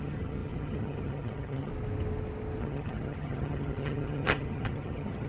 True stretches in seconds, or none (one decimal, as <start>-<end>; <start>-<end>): 1.7-2.6